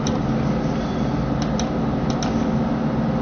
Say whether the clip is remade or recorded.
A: recorded